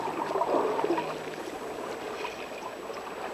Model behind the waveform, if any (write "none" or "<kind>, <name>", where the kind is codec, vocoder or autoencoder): none